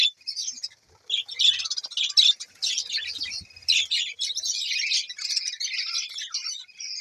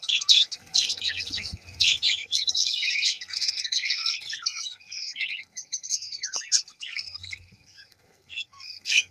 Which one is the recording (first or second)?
first